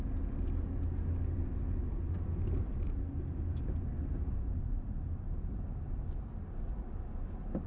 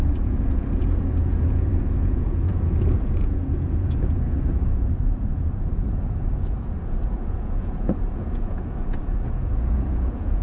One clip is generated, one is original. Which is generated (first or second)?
second